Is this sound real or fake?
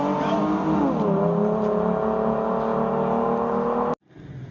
real